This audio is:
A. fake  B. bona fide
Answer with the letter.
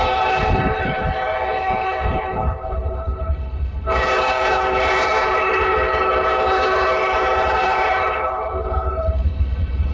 A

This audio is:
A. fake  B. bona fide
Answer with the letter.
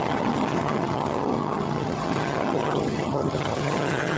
A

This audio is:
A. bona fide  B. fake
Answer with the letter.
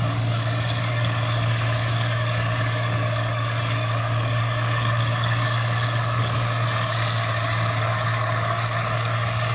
B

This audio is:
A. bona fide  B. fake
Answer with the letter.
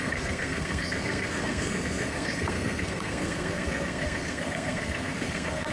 B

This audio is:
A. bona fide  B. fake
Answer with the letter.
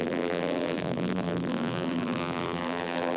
B